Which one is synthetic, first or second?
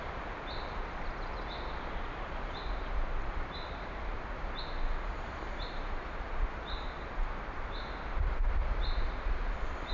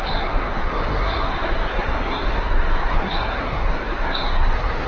second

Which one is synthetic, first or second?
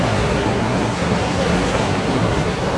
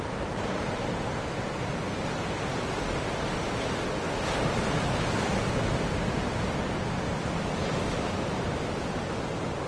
first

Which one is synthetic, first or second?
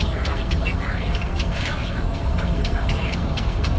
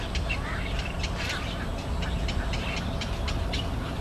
first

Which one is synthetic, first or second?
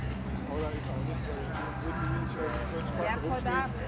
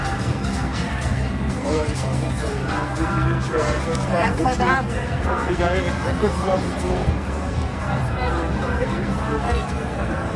second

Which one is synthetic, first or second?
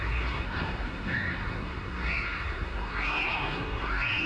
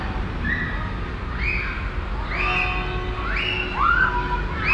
first